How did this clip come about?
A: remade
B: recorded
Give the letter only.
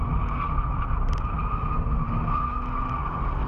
B